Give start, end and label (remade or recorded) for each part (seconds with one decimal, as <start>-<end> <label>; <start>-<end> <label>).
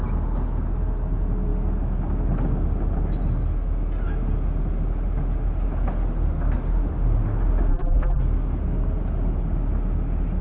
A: 0.0-7.7 recorded; 7.7-8.2 remade; 8.2-10.4 recorded